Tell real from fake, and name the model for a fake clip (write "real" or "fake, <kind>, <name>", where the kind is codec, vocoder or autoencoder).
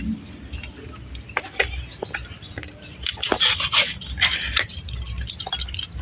real